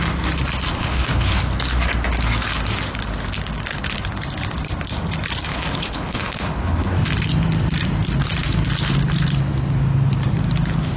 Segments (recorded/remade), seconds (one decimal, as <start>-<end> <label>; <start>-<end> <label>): 0.0-0.8 recorded; 0.8-1.4 remade; 1.4-5.5 recorded; 5.5-6.9 remade; 6.9-11.0 recorded